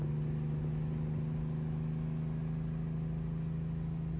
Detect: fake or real real